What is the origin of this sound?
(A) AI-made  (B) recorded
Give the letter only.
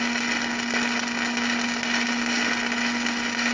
B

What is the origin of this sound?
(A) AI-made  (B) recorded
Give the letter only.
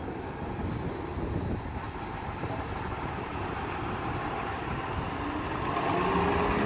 B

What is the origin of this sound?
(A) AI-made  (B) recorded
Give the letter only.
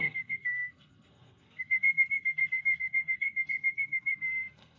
A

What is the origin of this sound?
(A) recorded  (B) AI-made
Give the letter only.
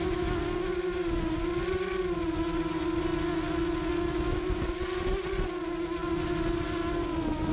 A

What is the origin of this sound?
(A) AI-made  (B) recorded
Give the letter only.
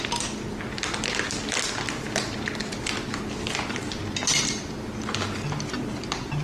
B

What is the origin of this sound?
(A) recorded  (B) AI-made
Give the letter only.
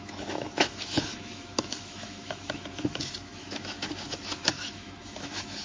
B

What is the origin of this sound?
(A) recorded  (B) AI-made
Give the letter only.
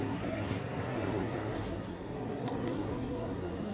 B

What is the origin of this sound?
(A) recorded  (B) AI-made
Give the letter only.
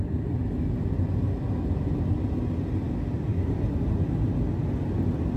A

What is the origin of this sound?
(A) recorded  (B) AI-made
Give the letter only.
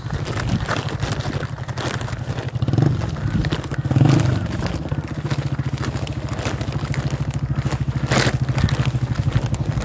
A